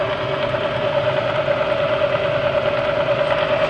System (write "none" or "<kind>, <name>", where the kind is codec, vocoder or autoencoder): none